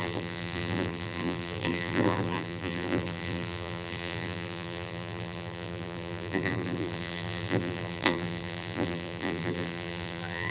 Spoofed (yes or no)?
yes